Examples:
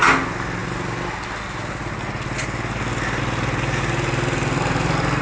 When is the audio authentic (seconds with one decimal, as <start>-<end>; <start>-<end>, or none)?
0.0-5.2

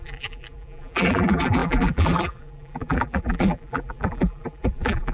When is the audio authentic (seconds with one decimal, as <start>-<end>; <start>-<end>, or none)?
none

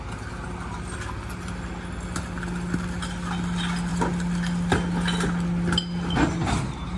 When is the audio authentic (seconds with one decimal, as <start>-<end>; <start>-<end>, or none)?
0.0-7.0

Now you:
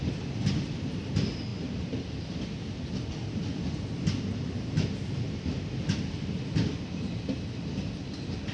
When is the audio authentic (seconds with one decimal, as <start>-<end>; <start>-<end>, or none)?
0.0-8.5

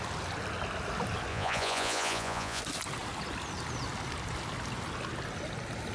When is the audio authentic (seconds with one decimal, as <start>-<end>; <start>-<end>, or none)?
0.0-1.3; 2.6-5.9

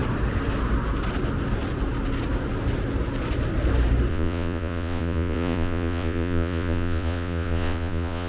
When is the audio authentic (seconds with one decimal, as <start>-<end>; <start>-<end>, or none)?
0.0-4.1

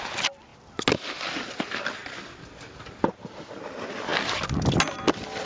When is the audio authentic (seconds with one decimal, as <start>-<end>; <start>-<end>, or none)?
0.0-5.5

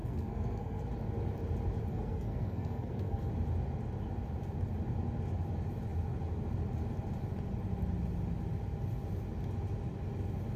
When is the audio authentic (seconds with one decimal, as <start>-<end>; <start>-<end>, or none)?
0.9-1.9; 3.3-10.6